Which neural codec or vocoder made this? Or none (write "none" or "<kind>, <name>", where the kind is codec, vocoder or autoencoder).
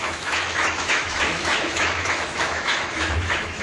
autoencoder, DAC-VAE